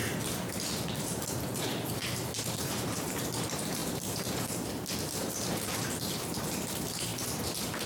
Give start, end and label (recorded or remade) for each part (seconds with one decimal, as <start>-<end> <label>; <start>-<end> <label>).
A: 0.0-1.0 recorded; 1.0-7.9 remade